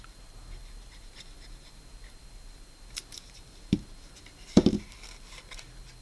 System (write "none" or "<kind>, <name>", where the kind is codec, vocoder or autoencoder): none